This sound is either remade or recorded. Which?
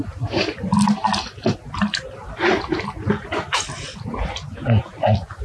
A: recorded